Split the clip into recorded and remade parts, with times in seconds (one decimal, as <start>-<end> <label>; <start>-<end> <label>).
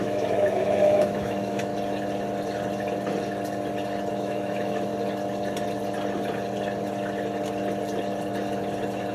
0.0-1.7 remade; 1.7-4.1 recorded; 4.1-4.9 remade; 4.9-9.1 recorded